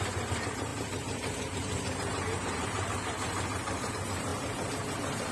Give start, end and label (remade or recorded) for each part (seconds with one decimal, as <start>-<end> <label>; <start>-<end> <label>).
0.0-4.3 remade; 4.3-5.3 recorded